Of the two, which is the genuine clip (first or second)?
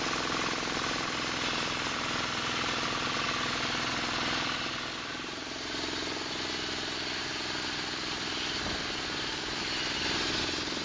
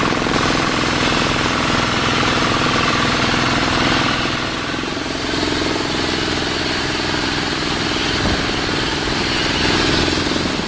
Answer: first